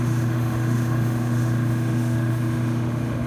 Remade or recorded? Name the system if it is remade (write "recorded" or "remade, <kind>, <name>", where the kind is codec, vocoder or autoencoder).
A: remade, autoencoder, DAC-VAE